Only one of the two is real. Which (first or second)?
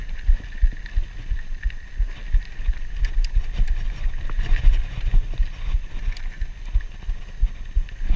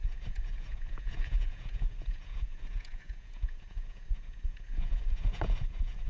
first